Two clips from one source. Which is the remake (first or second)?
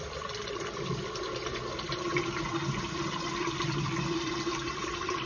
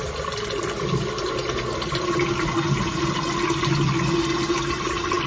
first